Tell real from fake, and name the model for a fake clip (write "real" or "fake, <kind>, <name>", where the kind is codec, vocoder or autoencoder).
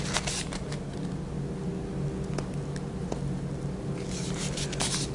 real